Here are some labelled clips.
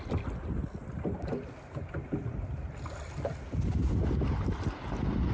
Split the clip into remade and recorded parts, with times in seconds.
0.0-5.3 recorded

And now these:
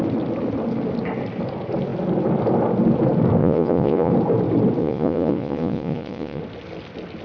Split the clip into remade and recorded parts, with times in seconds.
0.0-3.4 recorded; 3.4-4.1 remade; 4.1-4.8 recorded; 4.8-6.4 remade; 6.4-7.2 recorded

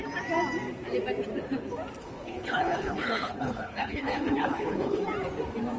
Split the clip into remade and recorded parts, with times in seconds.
0.0-2.0 recorded; 2.0-5.0 remade; 5.0-5.8 recorded

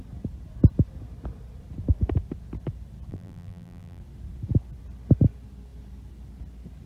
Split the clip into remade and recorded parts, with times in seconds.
0.0-3.1 recorded; 3.1-4.0 remade; 4.0-6.9 recorded

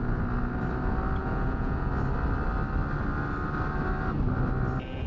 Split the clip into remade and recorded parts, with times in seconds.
0.0-1.2 recorded; 1.2-1.9 remade; 1.9-5.1 recorded

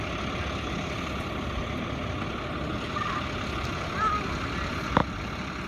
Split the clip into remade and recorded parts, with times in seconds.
0.0-5.7 remade

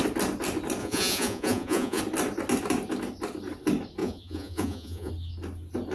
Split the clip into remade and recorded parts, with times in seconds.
0.0-0.8 recorded; 0.8-2.0 remade; 2.0-4.0 recorded; 4.0-5.1 remade; 5.1-5.9 recorded

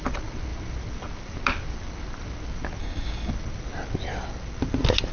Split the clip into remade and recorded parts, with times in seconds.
0.0-2.8 recorded; 2.8-3.3 remade; 3.3-5.1 recorded